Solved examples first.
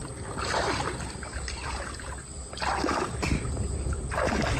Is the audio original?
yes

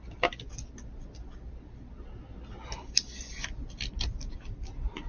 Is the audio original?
yes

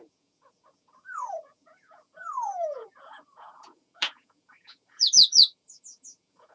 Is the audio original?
no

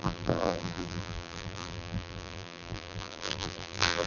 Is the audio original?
no